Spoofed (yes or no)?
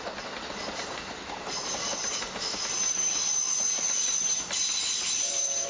no